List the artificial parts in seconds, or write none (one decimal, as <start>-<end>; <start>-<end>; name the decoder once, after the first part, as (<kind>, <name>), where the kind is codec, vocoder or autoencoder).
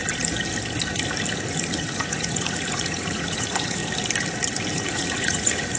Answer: 1.5-3.8 (vocoder, Vocos); 4.7-5.8